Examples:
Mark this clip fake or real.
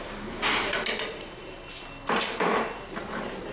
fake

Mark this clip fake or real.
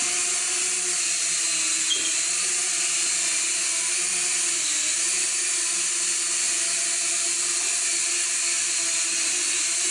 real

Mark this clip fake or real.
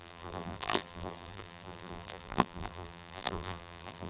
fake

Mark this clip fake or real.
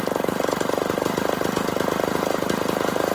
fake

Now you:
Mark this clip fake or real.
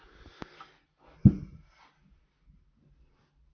real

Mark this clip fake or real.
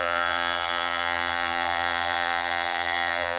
fake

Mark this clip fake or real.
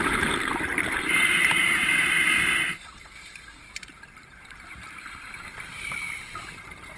fake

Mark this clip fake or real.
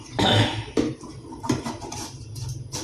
fake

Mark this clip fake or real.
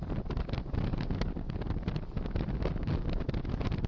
real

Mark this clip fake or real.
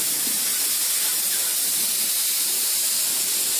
real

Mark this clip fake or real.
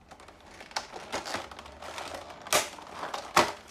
real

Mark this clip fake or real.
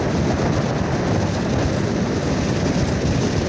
real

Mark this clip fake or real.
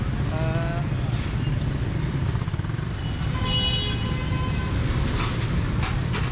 real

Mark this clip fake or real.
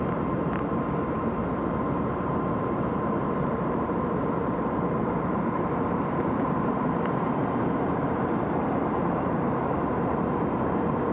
fake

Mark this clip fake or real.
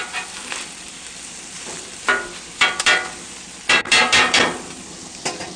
fake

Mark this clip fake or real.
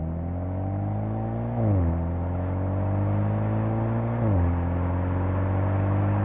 real